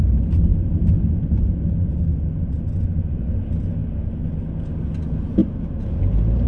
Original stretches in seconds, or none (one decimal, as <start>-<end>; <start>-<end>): 0.0-6.5